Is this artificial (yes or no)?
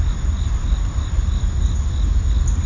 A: no